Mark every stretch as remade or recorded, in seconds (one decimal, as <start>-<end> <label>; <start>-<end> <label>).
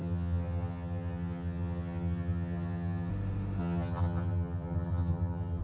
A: 0.0-3.1 remade; 3.1-3.6 recorded; 3.6-5.6 remade